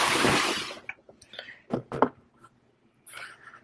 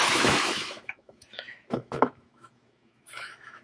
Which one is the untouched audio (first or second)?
first